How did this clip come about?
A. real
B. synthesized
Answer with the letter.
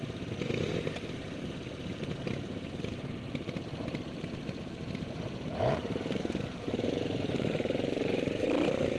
B